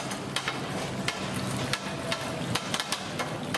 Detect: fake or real real